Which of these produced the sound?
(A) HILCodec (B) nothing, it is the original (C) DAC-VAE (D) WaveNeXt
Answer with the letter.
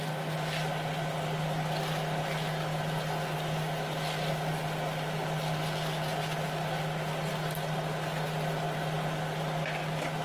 B